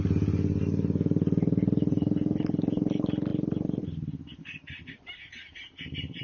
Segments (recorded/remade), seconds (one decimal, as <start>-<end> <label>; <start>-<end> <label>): 0.0-6.2 recorded